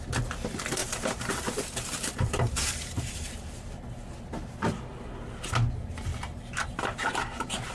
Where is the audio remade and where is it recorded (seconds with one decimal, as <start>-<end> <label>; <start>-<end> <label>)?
0.0-0.8 recorded; 0.8-3.3 remade; 3.3-6.1 recorded; 6.1-7.7 remade

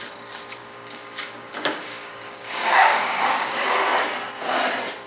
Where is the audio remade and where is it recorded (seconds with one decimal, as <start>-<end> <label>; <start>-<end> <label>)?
0.0-0.6 recorded; 0.6-3.7 remade; 3.7-5.1 recorded

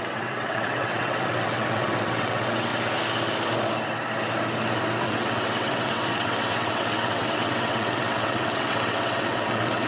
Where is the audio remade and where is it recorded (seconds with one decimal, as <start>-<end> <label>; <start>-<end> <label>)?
0.0-2.7 remade; 2.7-5.0 recorded; 5.0-9.9 remade

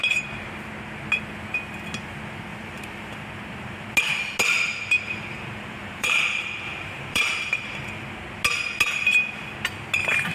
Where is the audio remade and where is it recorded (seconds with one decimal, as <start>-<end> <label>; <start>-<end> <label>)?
0.0-2.5 recorded; 2.5-3.2 remade; 3.2-5.3 recorded; 5.3-7.8 remade; 7.8-10.3 recorded

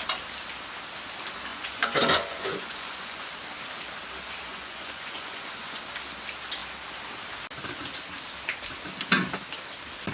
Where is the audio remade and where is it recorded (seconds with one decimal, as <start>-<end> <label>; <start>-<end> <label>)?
0.0-1.5 recorded; 1.5-3.3 remade; 3.3-4.5 recorded; 4.5-5.8 remade; 5.8-10.1 recorded

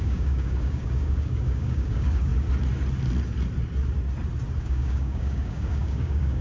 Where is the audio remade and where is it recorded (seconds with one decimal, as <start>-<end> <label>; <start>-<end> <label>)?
0.0-2.3 remade; 2.3-4.6 recorded; 4.6-6.4 remade

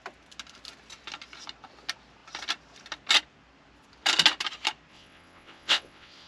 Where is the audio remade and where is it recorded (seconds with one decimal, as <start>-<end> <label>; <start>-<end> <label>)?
0.0-4.9 recorded; 4.9-6.3 remade

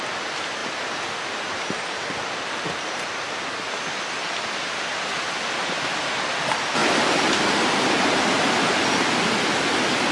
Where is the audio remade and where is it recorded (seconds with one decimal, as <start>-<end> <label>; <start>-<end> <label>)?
0.0-10.1 recorded